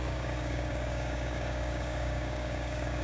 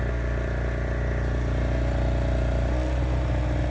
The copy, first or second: first